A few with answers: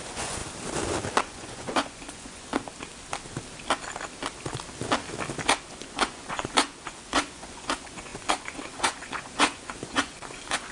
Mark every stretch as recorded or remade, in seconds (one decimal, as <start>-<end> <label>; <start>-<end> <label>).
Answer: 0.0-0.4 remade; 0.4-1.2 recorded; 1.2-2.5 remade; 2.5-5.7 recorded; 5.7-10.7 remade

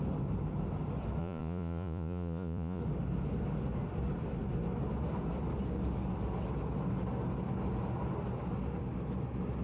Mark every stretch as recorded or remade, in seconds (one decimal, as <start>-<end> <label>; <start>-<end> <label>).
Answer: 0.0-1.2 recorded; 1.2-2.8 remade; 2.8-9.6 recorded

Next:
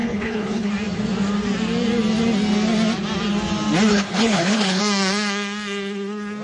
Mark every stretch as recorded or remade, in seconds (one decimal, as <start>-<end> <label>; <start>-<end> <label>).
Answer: 0.0-0.7 remade; 0.7-3.9 recorded; 3.9-4.8 remade; 4.8-6.4 recorded